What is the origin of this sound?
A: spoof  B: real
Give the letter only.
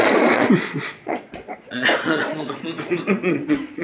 A